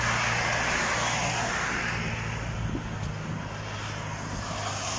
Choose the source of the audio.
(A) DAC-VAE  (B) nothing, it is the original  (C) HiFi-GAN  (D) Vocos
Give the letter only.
B